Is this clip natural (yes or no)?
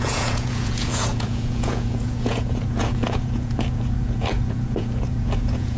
no